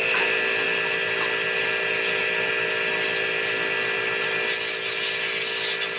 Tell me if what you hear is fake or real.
real